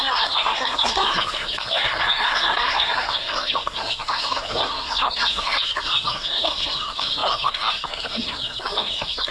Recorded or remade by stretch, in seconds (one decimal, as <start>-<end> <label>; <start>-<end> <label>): 0.0-9.3 remade